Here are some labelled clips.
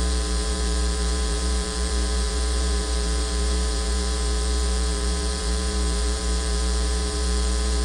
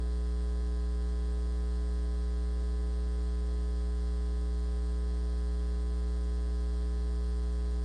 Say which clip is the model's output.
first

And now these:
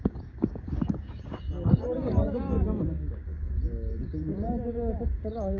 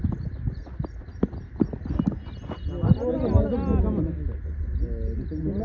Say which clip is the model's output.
first